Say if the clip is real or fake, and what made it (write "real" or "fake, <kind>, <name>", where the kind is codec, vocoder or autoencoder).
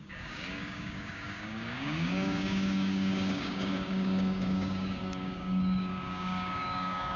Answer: fake, codec, DAC